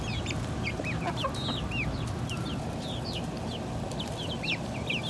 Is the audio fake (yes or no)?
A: yes